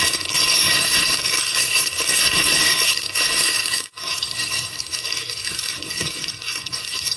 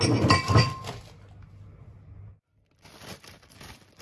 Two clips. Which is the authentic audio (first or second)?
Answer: second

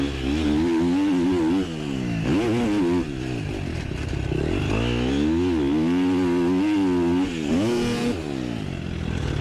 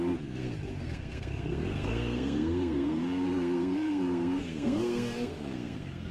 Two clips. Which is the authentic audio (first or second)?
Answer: first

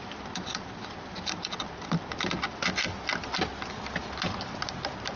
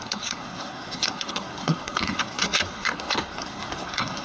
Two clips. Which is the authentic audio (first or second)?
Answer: first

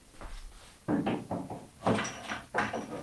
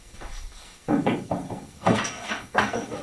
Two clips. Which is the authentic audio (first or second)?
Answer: first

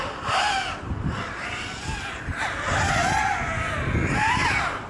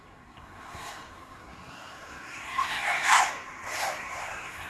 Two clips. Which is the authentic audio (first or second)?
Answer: first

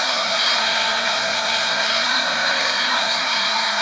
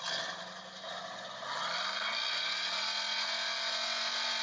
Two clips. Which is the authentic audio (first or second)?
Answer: second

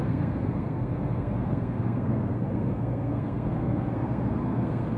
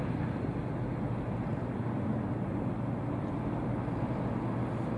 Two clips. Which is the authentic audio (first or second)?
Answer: second